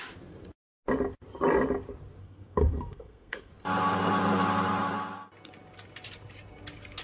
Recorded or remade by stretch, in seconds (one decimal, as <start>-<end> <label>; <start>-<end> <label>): 0.0-2.2 recorded; 2.2-3.5 remade; 3.5-7.0 recorded